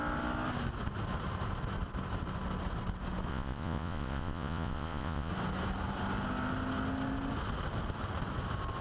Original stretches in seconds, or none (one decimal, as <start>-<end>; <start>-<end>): 0.0-3.3; 5.3-8.8

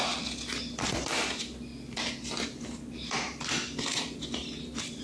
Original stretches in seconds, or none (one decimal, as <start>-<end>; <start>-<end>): 0.0-5.0

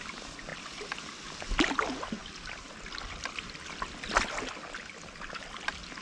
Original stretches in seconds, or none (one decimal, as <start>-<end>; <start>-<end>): 0.0-6.0

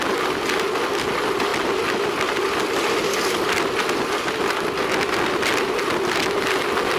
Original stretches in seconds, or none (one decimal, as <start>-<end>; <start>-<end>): 0.0-7.0

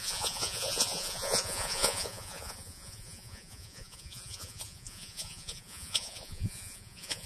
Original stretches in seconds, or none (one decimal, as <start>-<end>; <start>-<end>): none

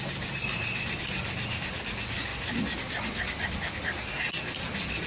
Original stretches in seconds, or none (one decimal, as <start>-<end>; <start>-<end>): 0.0-5.1

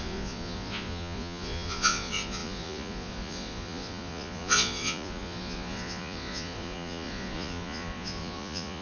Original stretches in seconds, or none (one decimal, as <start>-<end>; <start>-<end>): none

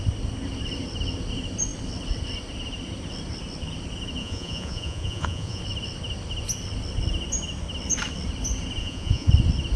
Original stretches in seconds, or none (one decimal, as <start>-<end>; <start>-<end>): 0.0-4.2; 5.6-8.8; 9.3-9.8